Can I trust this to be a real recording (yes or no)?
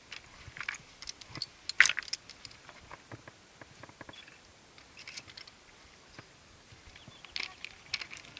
yes